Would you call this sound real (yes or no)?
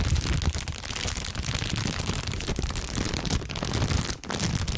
yes